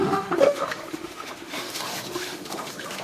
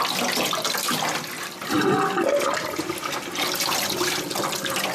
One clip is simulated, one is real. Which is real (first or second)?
second